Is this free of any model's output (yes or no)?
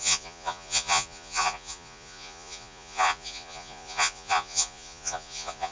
no